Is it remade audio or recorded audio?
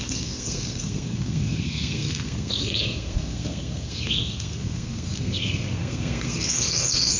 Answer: remade